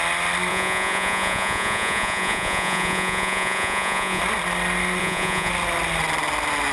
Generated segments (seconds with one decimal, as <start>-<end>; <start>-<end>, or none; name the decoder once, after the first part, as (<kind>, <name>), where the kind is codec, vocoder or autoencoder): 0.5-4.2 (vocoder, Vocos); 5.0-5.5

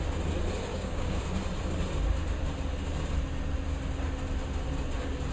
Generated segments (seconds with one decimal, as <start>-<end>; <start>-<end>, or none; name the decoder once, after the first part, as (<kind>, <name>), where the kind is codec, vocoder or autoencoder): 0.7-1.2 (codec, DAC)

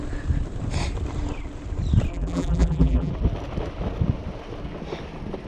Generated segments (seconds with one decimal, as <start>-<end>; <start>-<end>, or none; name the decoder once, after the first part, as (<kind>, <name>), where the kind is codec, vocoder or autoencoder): 2.1-3.1 (vocoder, BigVGAN v2)

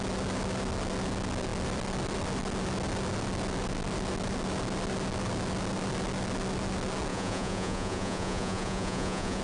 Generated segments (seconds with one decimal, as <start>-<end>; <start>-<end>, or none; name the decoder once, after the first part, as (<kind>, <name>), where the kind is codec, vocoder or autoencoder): 7.1-9.4 (vocoder, Vocos)

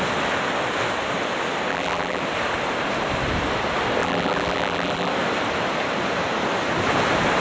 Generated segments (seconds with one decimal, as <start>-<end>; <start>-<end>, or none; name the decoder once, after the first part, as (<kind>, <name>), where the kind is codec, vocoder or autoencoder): 1.7-2.2 (vocoder, BigVGAN v2); 4.0-5.1

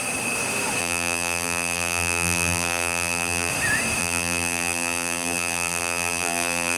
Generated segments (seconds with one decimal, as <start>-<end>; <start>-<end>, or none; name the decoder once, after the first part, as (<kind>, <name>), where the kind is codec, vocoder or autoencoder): 0.8-3.5 (vocoder, BigVGAN v2); 4.0-6.8

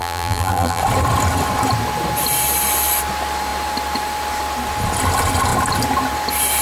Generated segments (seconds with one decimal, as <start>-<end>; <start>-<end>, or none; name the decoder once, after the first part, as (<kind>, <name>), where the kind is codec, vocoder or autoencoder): 0.0-0.8 (vocoder, BigVGAN v2)